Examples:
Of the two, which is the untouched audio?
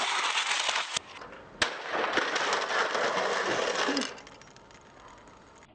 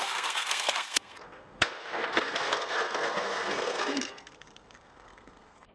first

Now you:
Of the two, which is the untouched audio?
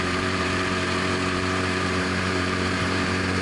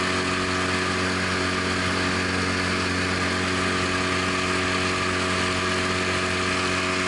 second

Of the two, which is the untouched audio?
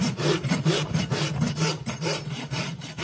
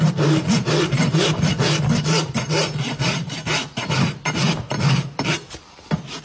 second